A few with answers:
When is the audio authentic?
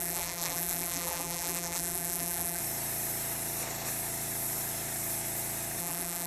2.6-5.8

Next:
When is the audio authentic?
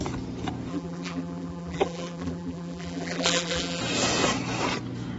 0.0-0.7; 3.8-5.2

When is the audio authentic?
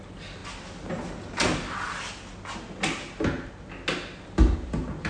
0.0-5.1